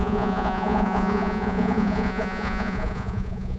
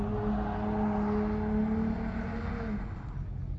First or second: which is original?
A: second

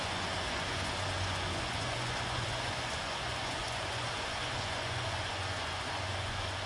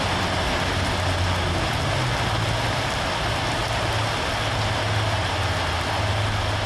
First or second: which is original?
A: second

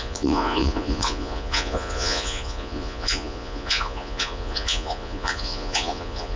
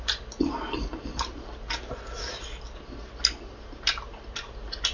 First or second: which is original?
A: second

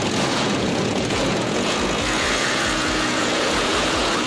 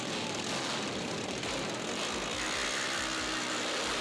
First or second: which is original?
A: second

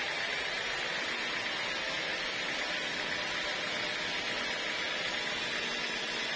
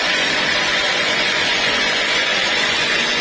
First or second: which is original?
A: first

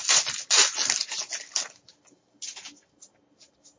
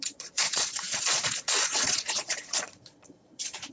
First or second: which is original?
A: first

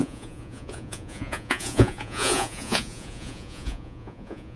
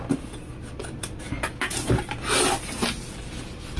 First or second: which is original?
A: second